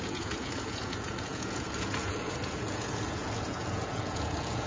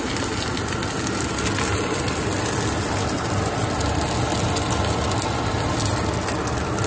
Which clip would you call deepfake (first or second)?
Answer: first